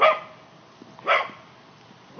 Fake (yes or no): no